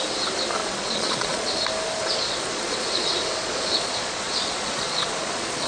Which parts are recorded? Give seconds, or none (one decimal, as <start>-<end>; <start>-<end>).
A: 0.0-0.6; 1.5-2.0